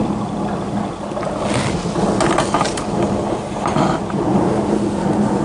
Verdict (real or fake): real